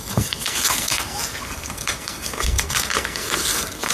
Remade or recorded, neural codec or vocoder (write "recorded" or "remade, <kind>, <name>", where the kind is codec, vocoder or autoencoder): remade, codec, SNAC